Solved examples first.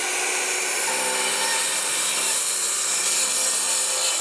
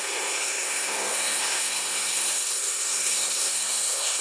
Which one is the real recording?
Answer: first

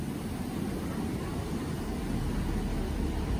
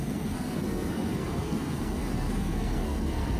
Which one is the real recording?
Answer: first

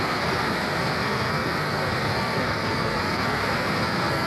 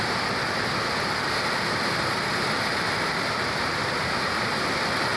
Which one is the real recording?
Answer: second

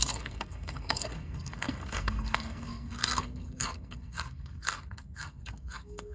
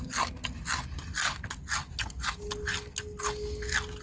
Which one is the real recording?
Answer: second